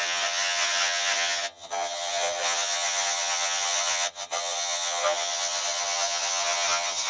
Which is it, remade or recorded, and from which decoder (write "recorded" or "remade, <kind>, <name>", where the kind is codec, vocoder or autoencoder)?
remade, vocoder, HiFi-GAN